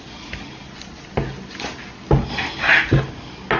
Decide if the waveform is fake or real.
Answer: real